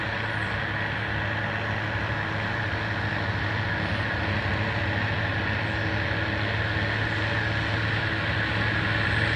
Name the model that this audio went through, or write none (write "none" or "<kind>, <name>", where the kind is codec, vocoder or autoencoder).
none